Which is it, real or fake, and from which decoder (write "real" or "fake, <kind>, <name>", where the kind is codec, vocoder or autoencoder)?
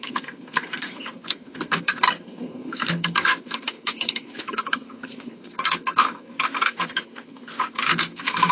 fake, codec, SNAC